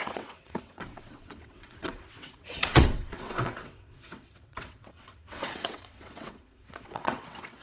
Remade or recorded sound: remade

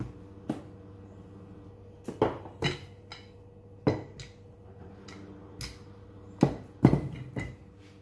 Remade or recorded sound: recorded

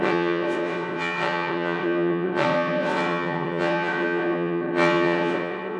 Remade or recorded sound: remade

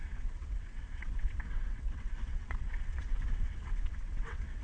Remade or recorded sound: remade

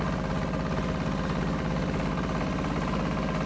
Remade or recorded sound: recorded